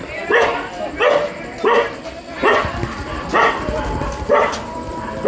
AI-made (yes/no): yes